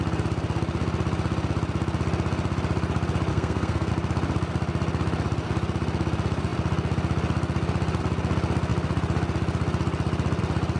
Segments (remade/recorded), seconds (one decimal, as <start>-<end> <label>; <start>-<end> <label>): 0.0-3.3 recorded; 3.3-3.9 remade; 3.9-10.8 recorded